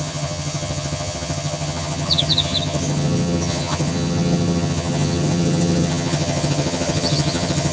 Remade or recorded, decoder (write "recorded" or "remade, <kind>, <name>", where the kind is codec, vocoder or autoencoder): remade, vocoder, HiFi-GAN